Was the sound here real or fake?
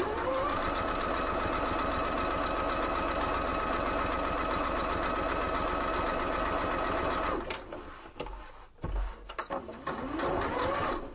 real